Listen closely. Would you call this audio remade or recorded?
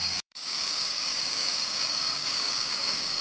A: remade